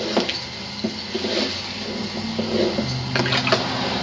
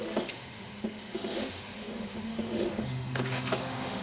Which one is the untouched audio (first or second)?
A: first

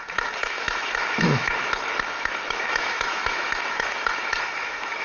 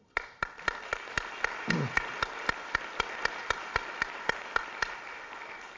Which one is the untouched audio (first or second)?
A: second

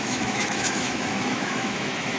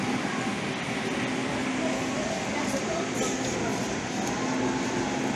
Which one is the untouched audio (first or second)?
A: second